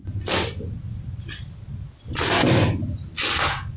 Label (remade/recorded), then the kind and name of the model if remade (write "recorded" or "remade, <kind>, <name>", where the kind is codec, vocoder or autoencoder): recorded